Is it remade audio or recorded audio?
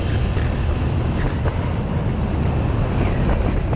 recorded